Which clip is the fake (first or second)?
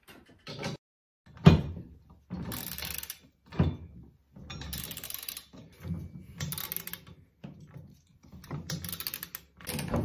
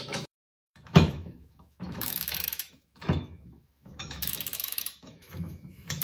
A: second